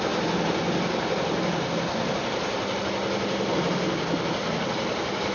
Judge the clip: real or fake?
real